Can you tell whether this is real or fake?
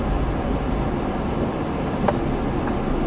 real